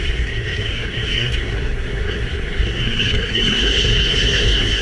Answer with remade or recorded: remade